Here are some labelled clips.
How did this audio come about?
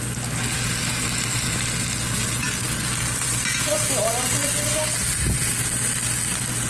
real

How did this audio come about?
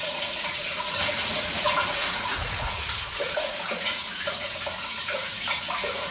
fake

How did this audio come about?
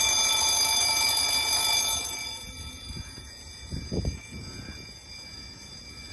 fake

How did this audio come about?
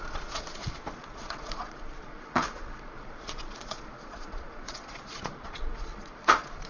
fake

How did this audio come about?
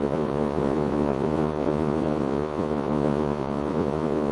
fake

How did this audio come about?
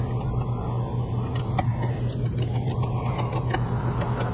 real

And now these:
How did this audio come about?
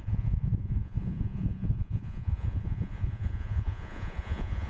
fake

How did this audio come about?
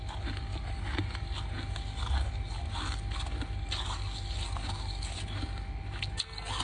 real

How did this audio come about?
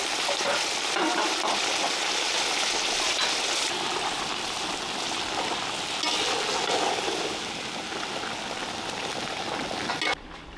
real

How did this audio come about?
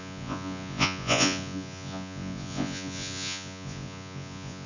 fake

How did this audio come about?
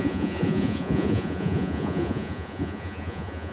fake